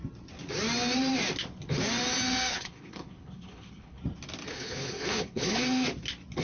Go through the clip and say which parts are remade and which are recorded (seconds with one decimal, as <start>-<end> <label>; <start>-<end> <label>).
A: 0.0-2.5 recorded; 2.5-4.0 remade; 4.0-4.5 recorded; 4.5-5.6 remade; 5.6-6.4 recorded